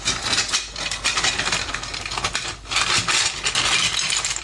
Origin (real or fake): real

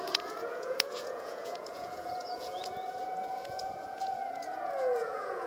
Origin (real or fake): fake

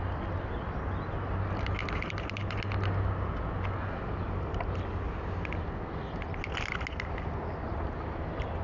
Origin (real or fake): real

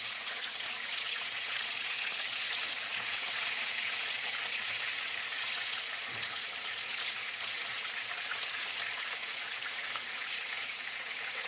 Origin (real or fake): fake